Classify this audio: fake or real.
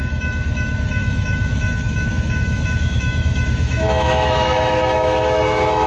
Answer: fake